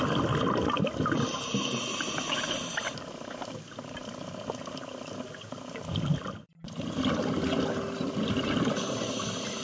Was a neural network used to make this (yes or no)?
no